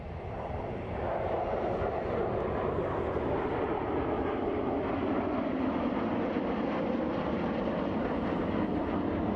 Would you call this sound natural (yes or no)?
yes